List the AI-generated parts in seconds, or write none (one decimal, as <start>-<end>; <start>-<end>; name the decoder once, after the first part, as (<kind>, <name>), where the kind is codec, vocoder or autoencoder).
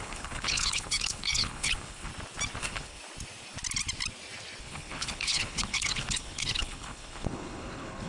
0.0-2.1 (codec, HILCodec); 2.6-3.0; 4.6-8.1